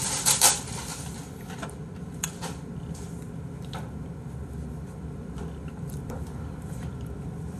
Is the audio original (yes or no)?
no